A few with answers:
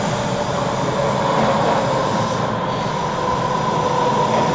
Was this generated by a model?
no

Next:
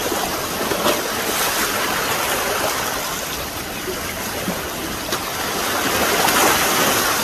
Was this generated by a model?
no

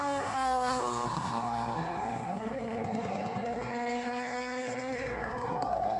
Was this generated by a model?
yes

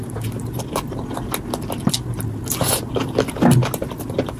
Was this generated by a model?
no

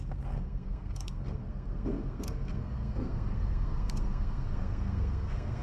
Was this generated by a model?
yes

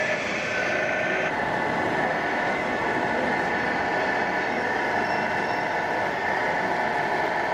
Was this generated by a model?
no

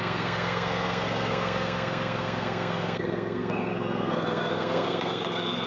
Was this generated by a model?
yes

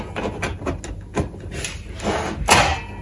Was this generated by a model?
no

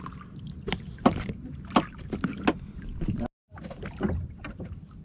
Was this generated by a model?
no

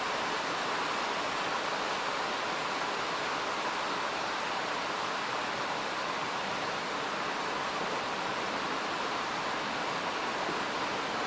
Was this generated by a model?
no